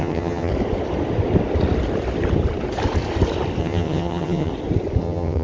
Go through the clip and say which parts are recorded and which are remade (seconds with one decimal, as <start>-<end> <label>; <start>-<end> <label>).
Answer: 0.0-0.5 remade; 0.5-3.6 recorded; 3.6-4.5 remade; 4.5-5.0 recorded; 5.0-5.4 remade